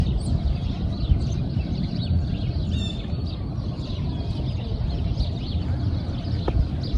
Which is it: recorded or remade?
recorded